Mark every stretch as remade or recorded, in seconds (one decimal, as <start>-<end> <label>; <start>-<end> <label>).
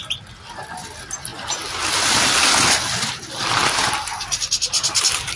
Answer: 0.0-5.4 recorded